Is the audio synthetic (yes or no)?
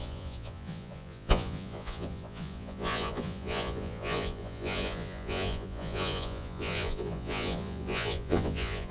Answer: yes